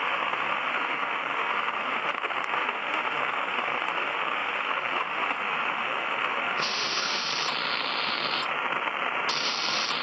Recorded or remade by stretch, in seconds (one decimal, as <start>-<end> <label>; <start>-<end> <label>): 0.0-7.3 remade; 7.3-10.0 recorded